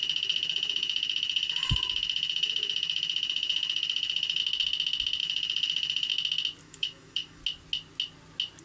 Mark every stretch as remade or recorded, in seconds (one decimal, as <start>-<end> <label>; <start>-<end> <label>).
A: 0.0-4.4 remade; 4.4-5.2 recorded; 5.2-6.1 remade; 6.1-6.6 recorded; 6.6-7.4 remade; 7.4-8.6 recorded